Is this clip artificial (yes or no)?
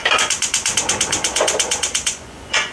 yes